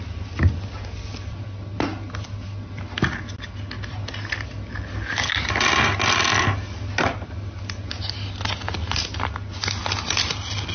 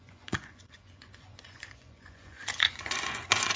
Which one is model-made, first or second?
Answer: second